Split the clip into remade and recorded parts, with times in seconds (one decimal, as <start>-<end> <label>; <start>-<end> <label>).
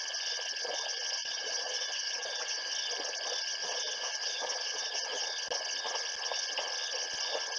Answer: 0.0-1.2 recorded; 1.2-2.7 remade; 2.7-3.6 recorded; 3.6-5.2 remade; 5.2-7.6 recorded